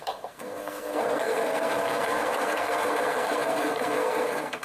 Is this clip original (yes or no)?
no